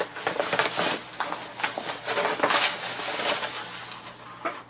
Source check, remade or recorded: recorded